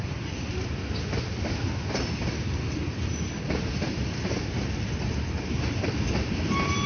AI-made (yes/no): no